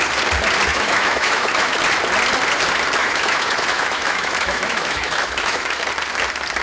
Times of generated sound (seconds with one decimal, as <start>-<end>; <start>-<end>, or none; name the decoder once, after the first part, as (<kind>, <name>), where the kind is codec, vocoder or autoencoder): 0.7-1.8 (autoencoder, DAC-VAE); 3.0-5.8